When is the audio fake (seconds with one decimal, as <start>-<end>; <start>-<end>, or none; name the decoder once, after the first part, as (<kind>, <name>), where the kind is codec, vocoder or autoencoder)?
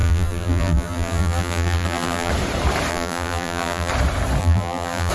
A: 0.0-2.3 (vocoder, BigVGAN v2); 2.9-3.9; 4.4-5.1